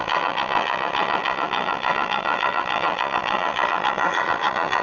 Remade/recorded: remade